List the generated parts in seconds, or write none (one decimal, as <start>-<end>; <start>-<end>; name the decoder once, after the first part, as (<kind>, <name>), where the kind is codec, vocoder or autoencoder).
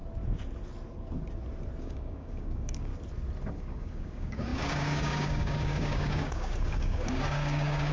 1.8-2.9 (codec, DAC); 3.5-7.9